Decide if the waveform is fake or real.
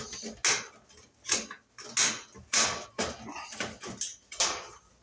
real